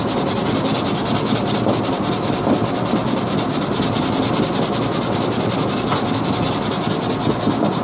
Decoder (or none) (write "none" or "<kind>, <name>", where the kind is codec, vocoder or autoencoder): none